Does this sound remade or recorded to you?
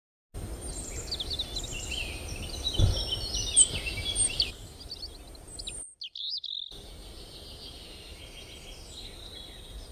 recorded